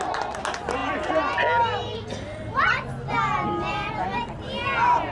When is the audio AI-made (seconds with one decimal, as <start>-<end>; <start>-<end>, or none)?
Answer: none